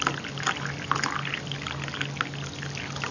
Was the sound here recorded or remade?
recorded